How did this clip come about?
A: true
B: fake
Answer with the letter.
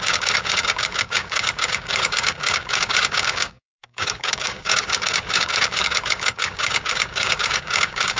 B